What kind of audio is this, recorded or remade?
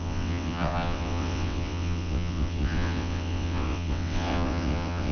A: remade